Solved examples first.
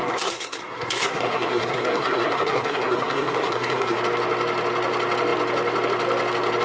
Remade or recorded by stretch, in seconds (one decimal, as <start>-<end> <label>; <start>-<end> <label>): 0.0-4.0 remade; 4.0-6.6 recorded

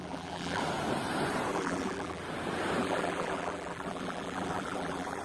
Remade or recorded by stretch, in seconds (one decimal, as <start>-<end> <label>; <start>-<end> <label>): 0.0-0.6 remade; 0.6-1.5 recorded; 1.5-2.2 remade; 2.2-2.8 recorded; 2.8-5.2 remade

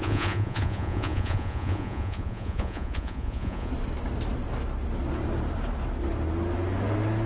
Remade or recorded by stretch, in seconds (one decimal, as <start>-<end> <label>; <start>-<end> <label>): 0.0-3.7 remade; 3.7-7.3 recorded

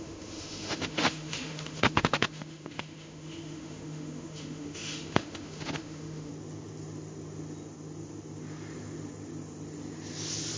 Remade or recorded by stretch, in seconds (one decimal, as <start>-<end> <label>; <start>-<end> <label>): 0.0-6.3 remade; 6.3-10.6 recorded

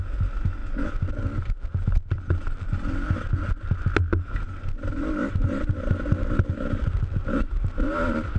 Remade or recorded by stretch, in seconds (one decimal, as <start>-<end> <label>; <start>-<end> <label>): 0.0-8.4 recorded